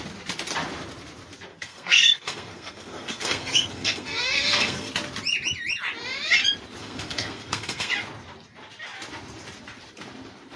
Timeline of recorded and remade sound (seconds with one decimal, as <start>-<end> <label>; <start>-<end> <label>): 0.0-1.5 recorded; 1.5-4.9 remade; 4.9-6.8 recorded; 6.8-7.9 remade; 7.9-10.6 recorded